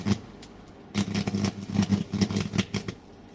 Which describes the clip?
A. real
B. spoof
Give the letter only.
A